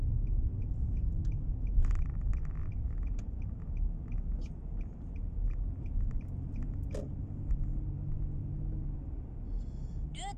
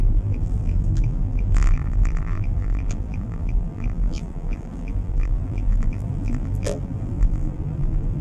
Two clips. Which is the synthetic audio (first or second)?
second